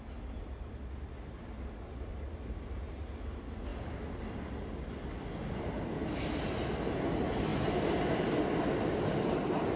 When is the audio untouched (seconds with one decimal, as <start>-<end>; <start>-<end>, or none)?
0.0-9.8